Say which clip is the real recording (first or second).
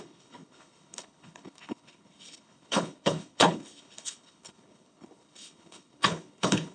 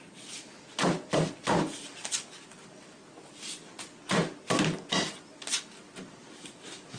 second